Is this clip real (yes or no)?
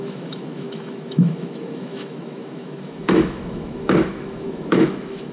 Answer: no